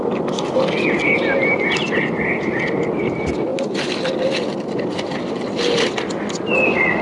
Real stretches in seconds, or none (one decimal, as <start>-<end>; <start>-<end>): 0.0-7.0